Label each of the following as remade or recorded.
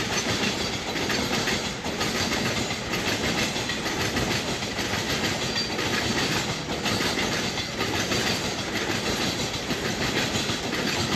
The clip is recorded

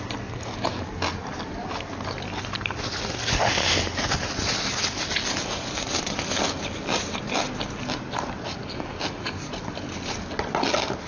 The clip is recorded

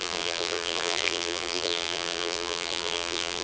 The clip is remade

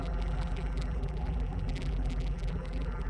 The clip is remade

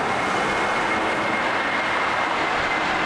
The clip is recorded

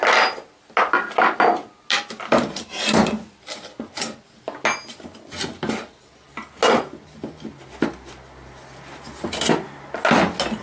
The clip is recorded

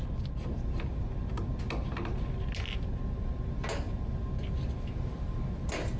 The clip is recorded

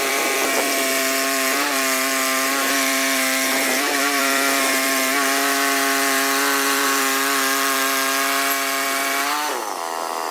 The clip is remade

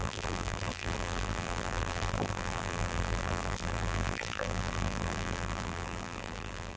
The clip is remade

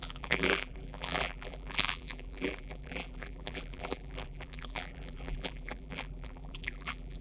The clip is remade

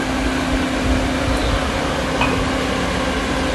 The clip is recorded